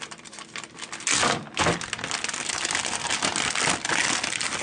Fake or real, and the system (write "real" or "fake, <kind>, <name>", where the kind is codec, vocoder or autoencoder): real